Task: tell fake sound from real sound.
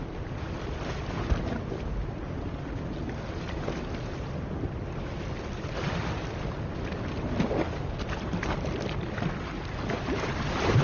real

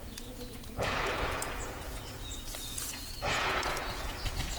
fake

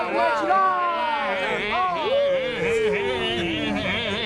real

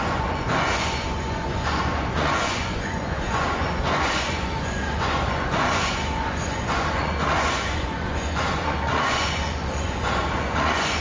fake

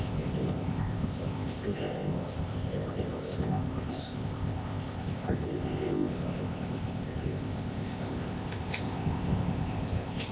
fake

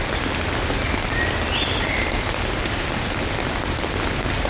real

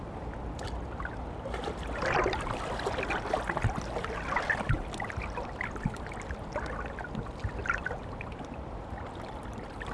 real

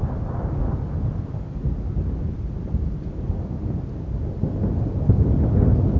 real